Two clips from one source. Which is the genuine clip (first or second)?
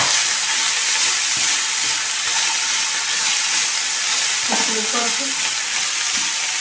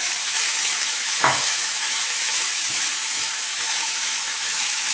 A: first